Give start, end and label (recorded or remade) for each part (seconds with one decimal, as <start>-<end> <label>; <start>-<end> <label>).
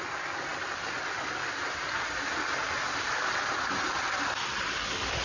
0.0-5.2 recorded